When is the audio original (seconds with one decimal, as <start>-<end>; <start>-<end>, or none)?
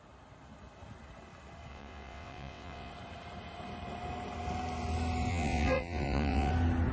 0.0-1.7; 2.9-5.3; 6.5-6.9